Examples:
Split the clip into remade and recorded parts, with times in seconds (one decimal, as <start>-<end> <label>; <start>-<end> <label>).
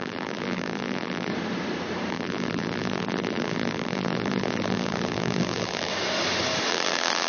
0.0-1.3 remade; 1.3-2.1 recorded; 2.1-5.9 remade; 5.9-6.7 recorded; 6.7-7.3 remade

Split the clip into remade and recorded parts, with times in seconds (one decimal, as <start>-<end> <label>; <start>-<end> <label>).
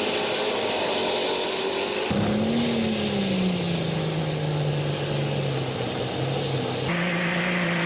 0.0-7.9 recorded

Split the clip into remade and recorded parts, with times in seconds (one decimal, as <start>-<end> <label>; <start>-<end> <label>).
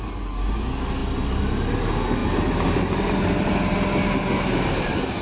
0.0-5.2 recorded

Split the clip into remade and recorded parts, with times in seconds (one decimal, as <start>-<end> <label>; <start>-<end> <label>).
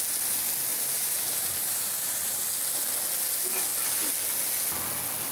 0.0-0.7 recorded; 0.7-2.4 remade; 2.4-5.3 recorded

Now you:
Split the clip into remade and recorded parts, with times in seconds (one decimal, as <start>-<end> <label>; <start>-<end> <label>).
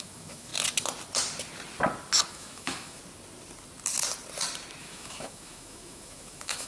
0.0-0.5 remade; 0.5-2.3 recorded; 2.3-3.0 remade; 3.0-4.8 recorded; 4.8-6.7 remade